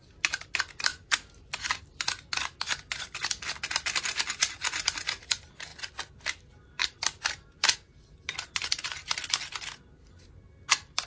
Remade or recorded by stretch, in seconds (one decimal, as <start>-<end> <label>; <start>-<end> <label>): 0.0-0.9 remade; 0.9-4.0 recorded; 4.0-5.7 remade; 5.7-10.7 recorded; 10.7-11.1 remade